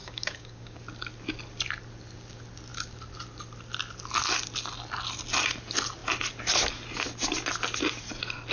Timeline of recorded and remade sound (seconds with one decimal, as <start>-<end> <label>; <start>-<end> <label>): 0.0-0.8 remade; 0.8-8.5 recorded